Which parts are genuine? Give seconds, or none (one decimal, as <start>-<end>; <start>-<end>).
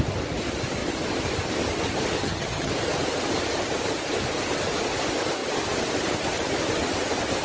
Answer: 0.0-2.2; 2.7-7.4